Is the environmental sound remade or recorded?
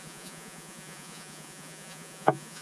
remade